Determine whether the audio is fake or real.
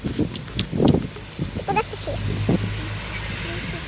real